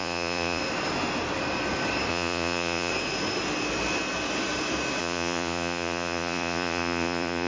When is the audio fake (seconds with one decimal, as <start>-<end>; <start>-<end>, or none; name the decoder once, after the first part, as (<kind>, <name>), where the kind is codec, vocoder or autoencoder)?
0.0-0.6 (vocoder, Vocos); 2.1-2.9; 5.0-7.5